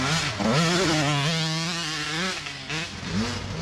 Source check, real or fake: real